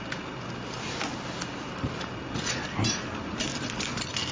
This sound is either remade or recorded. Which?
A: recorded